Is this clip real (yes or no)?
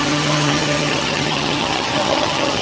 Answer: no